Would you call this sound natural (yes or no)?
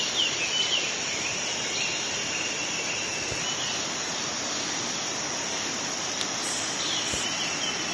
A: yes